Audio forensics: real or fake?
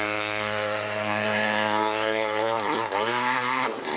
fake